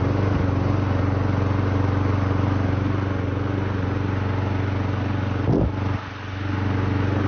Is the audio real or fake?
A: real